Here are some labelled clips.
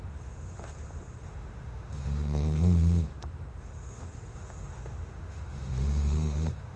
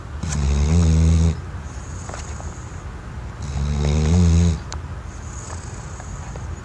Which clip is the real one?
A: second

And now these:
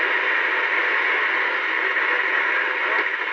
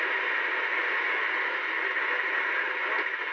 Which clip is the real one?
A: first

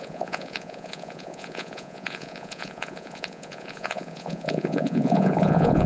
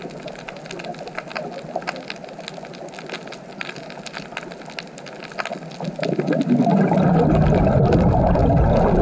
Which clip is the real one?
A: second